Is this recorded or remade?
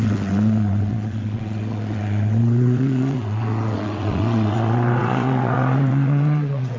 remade